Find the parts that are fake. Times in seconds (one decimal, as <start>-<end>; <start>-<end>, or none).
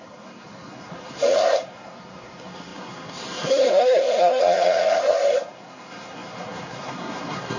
0.0-7.6